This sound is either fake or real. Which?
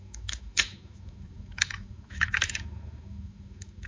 fake